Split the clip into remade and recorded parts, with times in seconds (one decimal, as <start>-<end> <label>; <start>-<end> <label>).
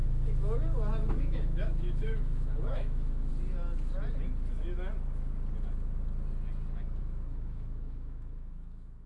0.0-1.1 recorded; 1.1-3.3 remade; 3.3-7.0 recorded; 7.0-9.1 remade